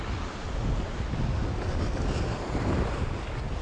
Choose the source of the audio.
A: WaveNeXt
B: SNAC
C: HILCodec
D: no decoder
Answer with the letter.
D